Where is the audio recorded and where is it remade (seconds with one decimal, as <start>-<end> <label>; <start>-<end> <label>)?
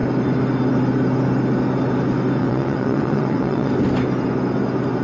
0.0-2.4 recorded; 2.4-3.7 remade; 3.7-5.0 recorded